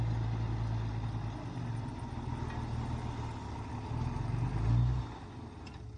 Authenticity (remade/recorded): recorded